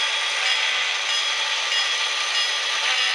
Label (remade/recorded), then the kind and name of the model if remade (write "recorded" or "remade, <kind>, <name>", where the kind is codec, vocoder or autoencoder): recorded